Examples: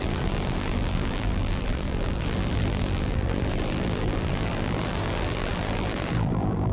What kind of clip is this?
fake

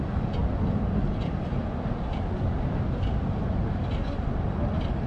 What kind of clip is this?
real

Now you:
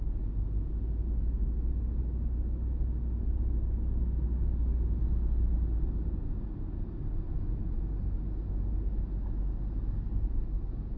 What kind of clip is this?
real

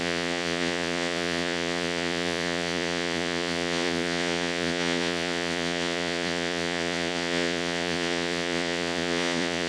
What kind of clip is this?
fake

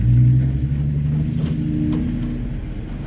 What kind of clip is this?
real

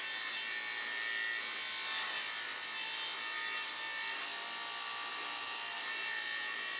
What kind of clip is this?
real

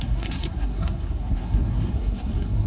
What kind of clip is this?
fake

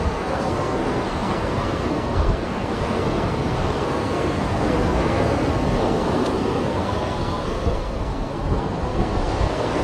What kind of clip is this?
fake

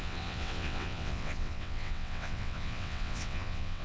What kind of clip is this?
fake